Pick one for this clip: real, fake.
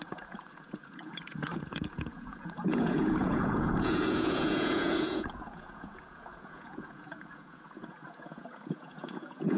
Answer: fake